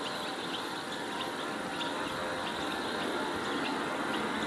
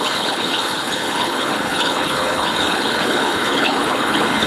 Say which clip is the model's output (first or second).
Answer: second